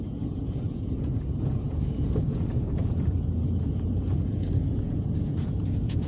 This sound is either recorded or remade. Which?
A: remade